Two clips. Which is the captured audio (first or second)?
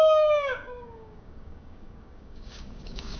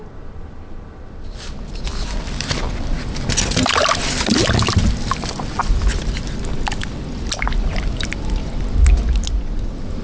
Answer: second